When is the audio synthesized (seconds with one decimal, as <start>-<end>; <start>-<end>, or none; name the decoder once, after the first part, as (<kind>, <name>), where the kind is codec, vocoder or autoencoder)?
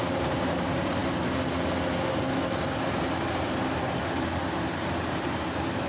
none